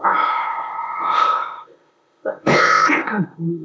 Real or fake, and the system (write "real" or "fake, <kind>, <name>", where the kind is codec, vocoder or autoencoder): fake, codec, ZipCodec